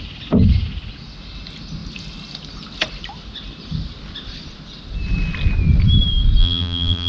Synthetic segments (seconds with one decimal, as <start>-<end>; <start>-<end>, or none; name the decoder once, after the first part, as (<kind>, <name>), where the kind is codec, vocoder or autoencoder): 6.4-7.1 (vocoder, BigVGAN v2)